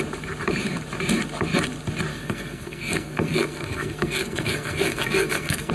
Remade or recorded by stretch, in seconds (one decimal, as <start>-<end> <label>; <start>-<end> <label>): 0.0-2.1 recorded; 2.1-5.7 remade